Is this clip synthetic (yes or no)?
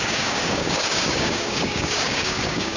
yes